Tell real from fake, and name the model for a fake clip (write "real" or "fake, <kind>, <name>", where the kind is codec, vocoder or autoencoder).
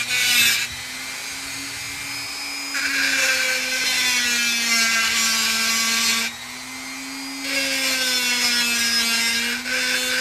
real